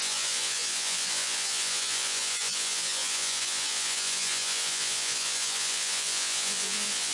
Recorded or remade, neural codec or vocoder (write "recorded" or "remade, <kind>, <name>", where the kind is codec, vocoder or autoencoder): remade, vocoder, Vocos